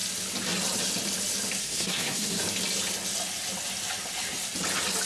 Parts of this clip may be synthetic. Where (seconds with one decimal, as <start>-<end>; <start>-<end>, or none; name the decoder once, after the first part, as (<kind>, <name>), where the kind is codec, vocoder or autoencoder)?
1.6-2.4 (codec, SNAC)